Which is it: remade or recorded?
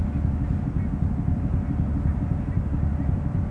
recorded